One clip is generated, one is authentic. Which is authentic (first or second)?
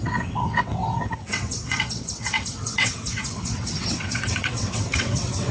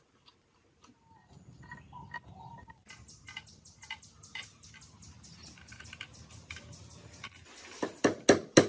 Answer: second